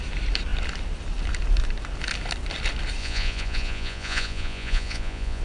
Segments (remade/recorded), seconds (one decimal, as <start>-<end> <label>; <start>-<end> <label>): 0.0-3.0 recorded; 3.0-5.4 remade